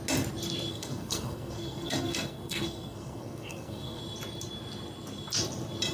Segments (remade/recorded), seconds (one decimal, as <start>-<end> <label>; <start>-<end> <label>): 0.0-0.7 recorded; 0.7-4.0 remade; 4.0-5.9 recorded